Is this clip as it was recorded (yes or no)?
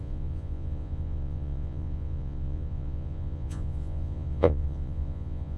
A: no